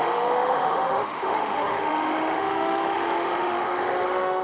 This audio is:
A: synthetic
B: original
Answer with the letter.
A